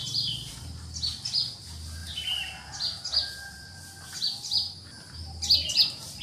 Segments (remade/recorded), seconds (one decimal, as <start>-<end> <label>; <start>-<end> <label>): 0.0-6.2 recorded